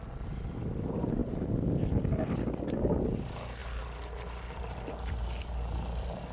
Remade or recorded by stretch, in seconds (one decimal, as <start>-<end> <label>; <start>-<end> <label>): 0.0-6.3 recorded